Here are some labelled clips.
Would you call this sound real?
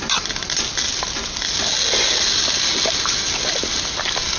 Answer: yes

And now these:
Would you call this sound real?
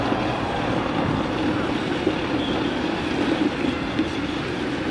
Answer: yes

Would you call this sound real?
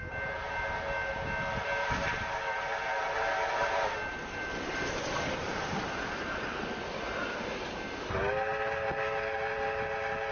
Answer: yes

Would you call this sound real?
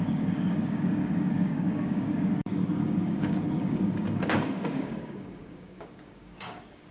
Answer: no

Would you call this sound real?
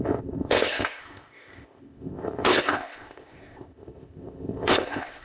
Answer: no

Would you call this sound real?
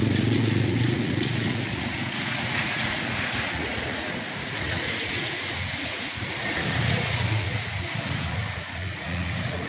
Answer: no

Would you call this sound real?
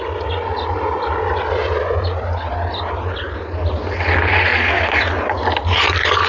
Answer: yes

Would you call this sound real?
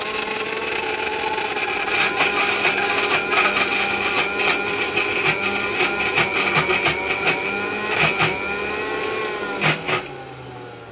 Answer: yes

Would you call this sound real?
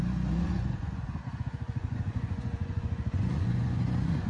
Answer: no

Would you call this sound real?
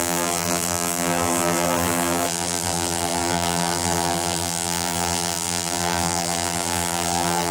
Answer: no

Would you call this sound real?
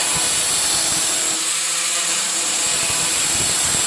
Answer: no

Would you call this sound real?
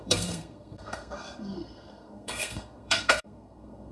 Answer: no